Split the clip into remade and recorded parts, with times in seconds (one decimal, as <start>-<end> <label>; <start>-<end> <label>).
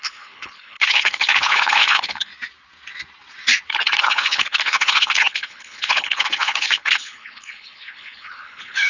0.0-2.3 remade; 2.3-4.0 recorded; 4.0-8.9 remade